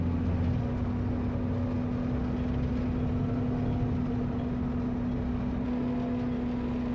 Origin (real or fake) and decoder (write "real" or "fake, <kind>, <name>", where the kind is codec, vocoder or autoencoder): real